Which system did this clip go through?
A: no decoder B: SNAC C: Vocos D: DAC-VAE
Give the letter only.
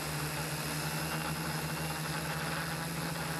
A